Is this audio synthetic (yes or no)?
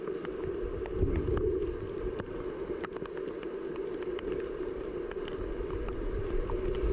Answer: no